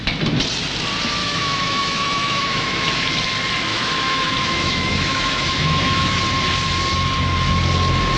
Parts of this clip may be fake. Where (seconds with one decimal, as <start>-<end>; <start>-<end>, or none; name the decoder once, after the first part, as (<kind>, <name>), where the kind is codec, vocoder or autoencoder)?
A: 1.2-3.0 (autoencoder, DAC-VAE); 3.7-6.2